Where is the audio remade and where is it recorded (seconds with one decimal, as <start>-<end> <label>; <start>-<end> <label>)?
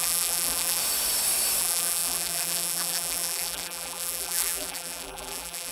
0.0-0.8 remade; 0.8-1.6 recorded; 1.6-5.7 remade